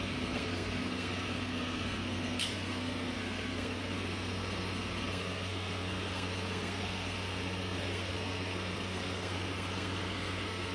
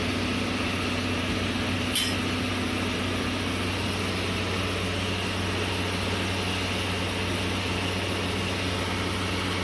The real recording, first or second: second